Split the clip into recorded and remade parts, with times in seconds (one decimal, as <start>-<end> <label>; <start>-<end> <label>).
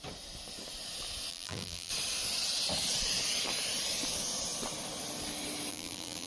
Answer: 0.0-1.3 recorded; 1.3-1.9 remade; 1.9-5.7 recorded; 5.7-6.3 remade